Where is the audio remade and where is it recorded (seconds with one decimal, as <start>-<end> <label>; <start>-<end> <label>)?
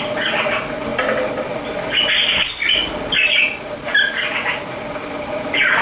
0.0-5.8 recorded